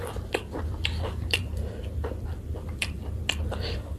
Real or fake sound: real